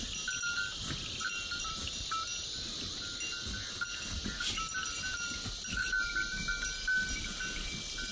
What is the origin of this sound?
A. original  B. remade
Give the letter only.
A